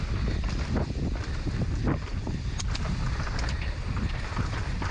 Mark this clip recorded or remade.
recorded